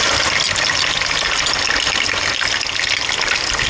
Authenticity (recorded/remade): recorded